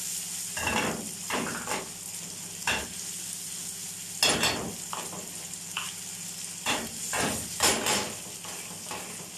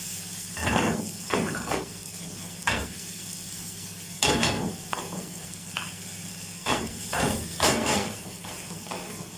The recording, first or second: first